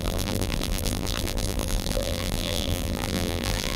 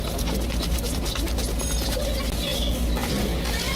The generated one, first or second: first